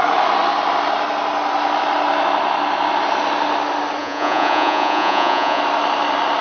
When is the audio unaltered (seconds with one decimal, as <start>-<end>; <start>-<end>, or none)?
0.0-4.0; 5.6-6.4